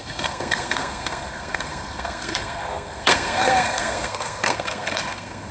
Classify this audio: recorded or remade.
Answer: remade